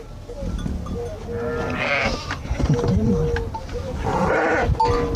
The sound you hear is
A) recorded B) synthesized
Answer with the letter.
A